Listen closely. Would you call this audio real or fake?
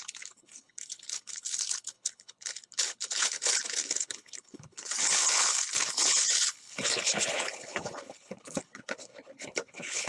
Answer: fake